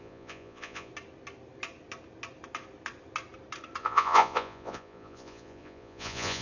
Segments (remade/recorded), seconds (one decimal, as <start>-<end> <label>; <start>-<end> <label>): 0.0-0.9 remade; 0.9-3.8 recorded; 3.8-6.4 remade